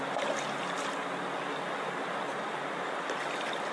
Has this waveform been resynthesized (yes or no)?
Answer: no